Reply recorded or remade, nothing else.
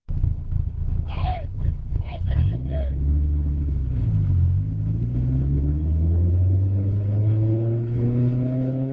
remade